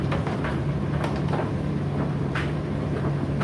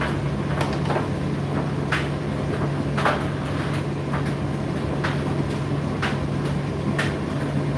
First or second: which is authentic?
second